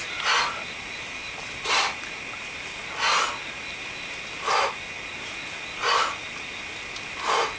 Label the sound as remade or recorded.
recorded